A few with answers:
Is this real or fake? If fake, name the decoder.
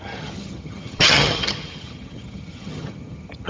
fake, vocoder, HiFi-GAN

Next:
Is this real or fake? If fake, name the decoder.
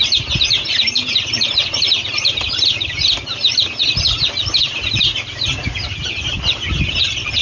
real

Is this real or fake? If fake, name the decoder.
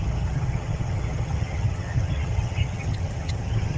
fake, vocoder, HiFi-GAN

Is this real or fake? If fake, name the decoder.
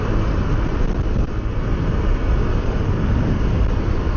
real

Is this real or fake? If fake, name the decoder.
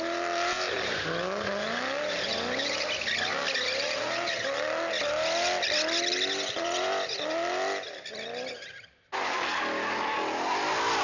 real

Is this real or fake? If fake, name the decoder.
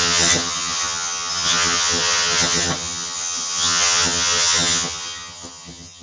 fake, vocoder, HiFi-GAN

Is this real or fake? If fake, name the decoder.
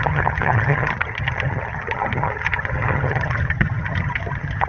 fake, vocoder, HiFi-GAN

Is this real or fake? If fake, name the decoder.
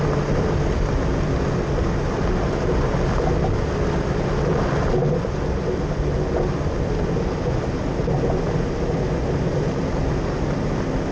real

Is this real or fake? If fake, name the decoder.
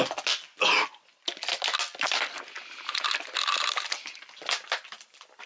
real